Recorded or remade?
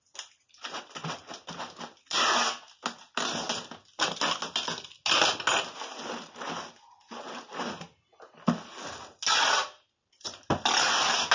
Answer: recorded